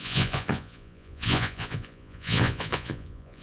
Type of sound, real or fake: fake